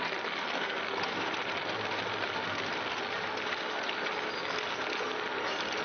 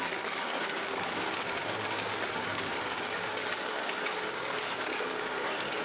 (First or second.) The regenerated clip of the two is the second